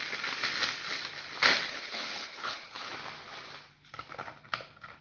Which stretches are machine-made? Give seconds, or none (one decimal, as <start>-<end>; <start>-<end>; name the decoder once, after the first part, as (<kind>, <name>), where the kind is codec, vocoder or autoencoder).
1.7-2.9 (codec, HILCodec)